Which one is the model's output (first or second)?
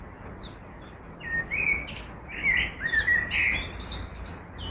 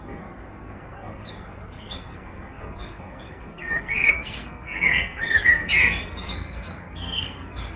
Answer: second